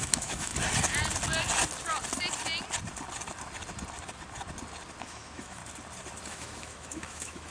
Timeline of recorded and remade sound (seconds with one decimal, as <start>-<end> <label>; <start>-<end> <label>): 0.0-0.5 remade; 0.5-5.0 recorded; 5.0-5.6 remade; 5.6-6.2 recorded; 6.2-7.5 remade